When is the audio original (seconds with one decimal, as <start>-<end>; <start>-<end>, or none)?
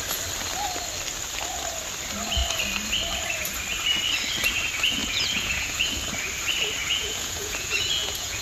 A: 0.0-5.0; 5.9-6.8